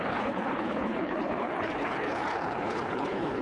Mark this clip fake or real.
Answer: fake